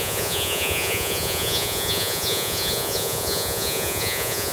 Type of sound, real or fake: fake